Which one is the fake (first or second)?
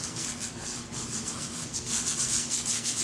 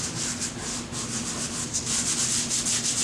first